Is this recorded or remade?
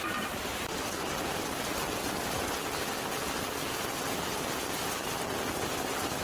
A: recorded